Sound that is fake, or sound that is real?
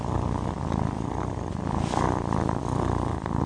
real